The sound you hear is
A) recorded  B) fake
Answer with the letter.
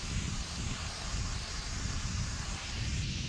A